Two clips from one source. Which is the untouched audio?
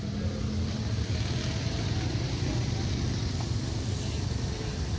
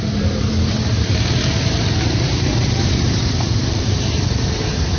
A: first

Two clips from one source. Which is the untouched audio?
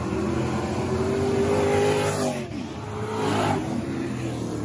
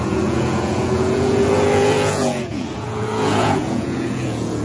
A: first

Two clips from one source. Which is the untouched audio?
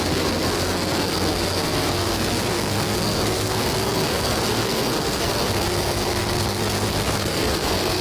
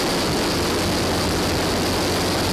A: second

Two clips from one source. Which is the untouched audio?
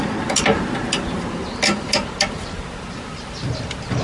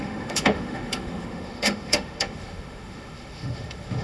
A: first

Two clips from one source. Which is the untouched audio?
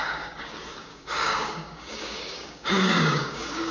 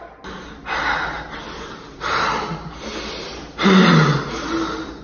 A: second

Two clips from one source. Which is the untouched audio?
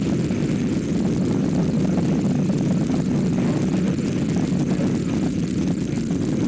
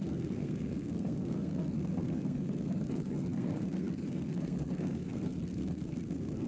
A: first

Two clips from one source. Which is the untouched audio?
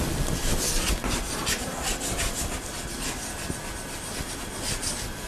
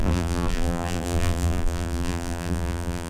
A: first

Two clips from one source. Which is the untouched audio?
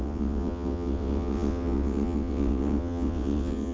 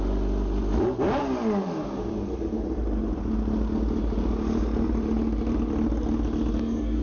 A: second